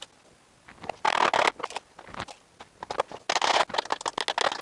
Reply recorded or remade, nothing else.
recorded